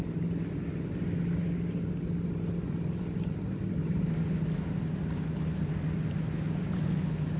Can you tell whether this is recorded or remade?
recorded